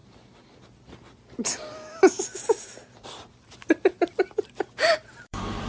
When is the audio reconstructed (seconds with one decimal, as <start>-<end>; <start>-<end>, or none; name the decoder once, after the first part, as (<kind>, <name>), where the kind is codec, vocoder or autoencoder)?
3.4-5.7 (vocoder, BigVGAN v2)

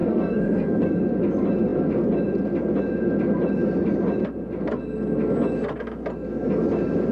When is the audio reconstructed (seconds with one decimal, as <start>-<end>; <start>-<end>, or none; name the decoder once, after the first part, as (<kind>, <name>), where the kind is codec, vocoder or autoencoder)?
0.0-1.0 (codec, SNAC)

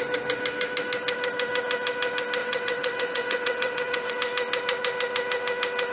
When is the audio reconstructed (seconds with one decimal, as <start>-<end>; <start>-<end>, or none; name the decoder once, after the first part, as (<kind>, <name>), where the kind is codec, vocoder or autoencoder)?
2.4-4.1 (vocoder, WaveNeXt)

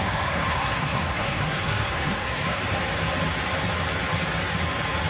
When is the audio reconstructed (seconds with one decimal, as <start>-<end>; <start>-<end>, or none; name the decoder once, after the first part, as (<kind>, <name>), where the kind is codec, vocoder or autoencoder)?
0.0-2.6 (codec, SNAC)

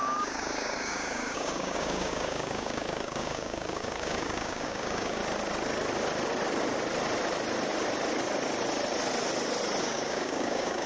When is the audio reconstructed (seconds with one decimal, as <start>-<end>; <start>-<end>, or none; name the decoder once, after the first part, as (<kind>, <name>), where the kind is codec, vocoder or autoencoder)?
0.0-5.2 (codec, DAC); 9.8-10.9